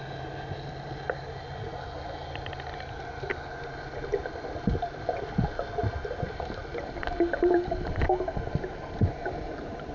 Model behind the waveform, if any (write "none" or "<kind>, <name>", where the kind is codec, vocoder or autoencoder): none